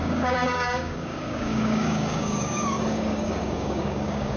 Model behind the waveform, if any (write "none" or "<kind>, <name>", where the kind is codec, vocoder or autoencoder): codec, DAC